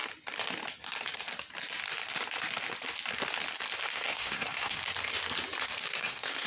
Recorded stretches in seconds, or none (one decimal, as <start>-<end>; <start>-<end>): 0.0-3.9; 4.8-6.0